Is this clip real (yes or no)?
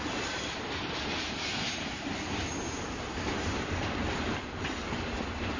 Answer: no